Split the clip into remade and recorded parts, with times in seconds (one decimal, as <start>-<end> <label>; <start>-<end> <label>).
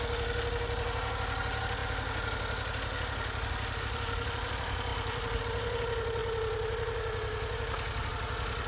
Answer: 0.0-4.9 recorded; 4.9-5.4 remade; 5.4-8.7 recorded